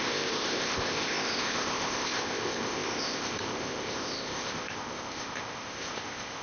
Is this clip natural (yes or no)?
no